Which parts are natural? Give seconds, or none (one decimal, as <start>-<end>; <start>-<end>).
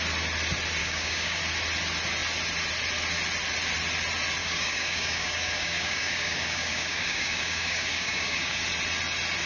0.0-0.8; 1.4-4.4; 8.6-9.5